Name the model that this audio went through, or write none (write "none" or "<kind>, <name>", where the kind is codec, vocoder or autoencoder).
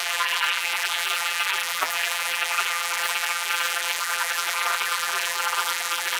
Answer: vocoder, BigVGAN v2